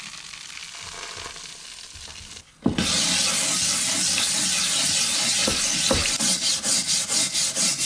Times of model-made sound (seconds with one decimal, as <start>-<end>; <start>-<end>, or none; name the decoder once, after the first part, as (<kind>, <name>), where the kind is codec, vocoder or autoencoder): none